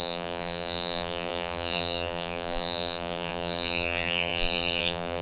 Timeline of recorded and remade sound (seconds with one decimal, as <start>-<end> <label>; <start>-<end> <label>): 0.0-5.2 remade